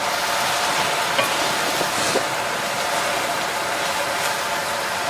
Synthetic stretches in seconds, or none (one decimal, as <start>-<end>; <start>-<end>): none